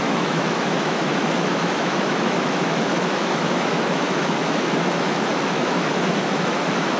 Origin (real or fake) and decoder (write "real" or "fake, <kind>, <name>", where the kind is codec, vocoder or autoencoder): fake, autoencoder, DAC-VAE